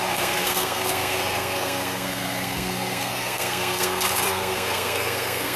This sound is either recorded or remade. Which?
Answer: remade